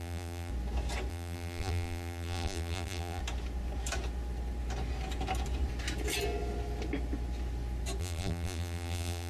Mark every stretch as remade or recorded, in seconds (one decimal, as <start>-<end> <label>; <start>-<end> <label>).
0.0-0.5 remade; 0.5-1.1 recorded; 1.1-3.2 remade; 3.2-8.0 recorded; 8.0-9.3 remade